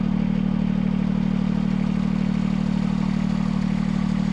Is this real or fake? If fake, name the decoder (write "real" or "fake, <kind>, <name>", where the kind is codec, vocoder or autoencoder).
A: real